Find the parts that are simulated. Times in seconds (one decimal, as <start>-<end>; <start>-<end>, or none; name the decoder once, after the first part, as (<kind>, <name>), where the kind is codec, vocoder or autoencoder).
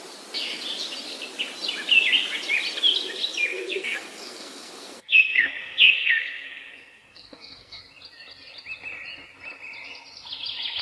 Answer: 3.5-7.8 (codec, SNAC)